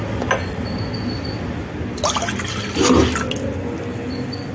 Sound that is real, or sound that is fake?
real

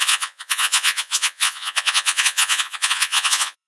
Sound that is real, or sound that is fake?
fake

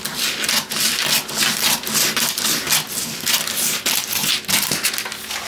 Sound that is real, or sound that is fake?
real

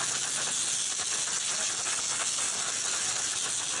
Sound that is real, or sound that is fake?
real